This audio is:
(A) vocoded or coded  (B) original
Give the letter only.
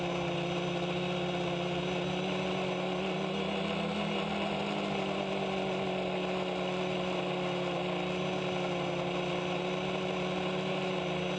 B